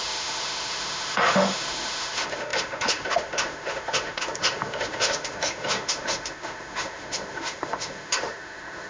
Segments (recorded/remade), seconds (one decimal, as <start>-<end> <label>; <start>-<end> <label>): 0.0-8.9 remade